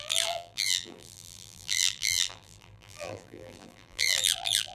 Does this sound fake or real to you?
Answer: fake